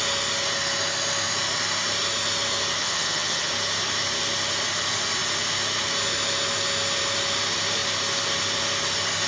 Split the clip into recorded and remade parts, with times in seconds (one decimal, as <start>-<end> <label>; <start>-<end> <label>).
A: 0.0-2.8 recorded; 2.8-3.5 remade; 3.5-9.3 recorded